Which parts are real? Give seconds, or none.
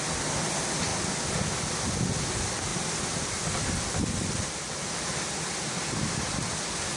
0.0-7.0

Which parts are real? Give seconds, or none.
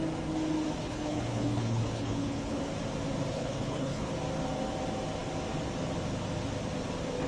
0.0-0.8; 2.6-3.3; 4.1-7.3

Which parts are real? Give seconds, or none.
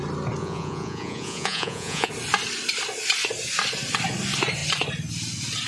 0.0-0.4; 2.1-5.7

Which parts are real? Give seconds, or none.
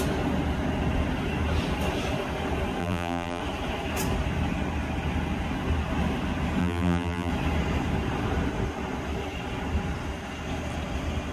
0.0-2.8; 3.4-6.6; 7.3-11.3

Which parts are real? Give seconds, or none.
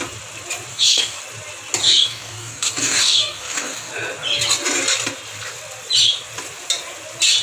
0.0-0.7; 1.2-1.8; 3.9-7.4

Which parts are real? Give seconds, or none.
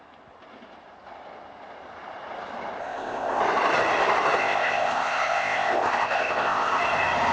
0.0-2.8; 3.4-4.4; 6.8-7.3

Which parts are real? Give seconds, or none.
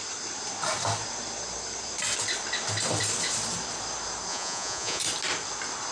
0.0-4.3; 5.0-5.9